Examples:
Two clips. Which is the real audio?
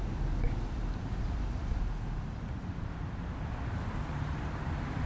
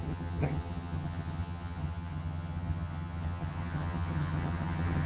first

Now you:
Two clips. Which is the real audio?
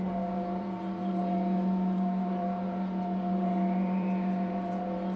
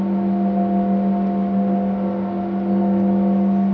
second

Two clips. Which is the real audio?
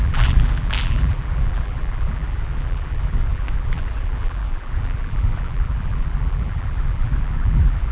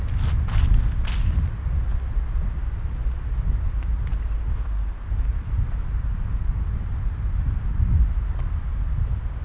second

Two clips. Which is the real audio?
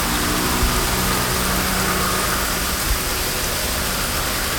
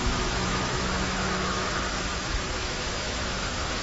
first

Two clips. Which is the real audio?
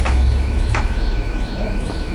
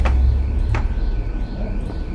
second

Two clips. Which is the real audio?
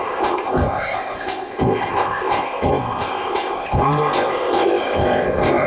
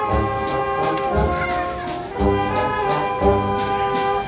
second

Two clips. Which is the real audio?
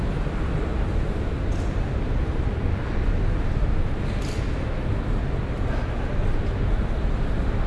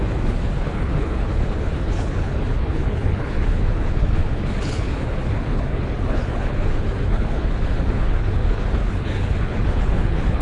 first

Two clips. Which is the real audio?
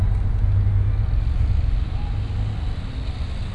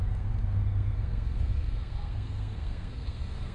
first